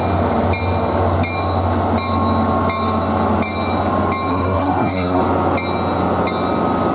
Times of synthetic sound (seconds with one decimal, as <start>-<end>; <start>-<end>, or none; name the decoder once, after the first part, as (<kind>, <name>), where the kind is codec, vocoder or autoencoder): 4.3-5.2 (codec, SNAC)